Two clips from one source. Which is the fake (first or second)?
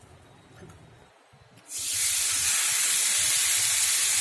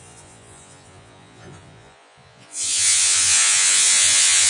second